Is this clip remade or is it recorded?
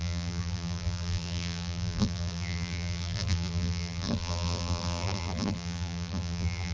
remade